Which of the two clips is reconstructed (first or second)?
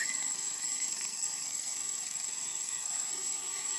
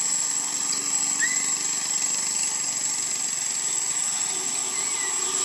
first